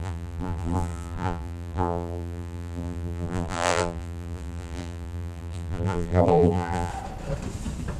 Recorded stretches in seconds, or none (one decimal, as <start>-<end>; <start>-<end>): 6.9-8.0